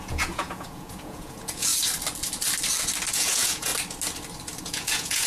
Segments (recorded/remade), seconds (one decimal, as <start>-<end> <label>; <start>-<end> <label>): 0.0-1.7 remade; 1.7-3.1 recorded; 3.1-3.7 remade; 3.7-4.6 recorded; 4.6-5.3 remade